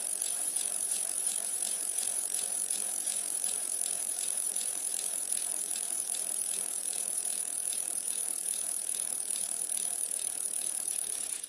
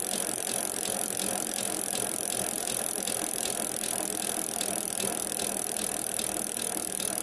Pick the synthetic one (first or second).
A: first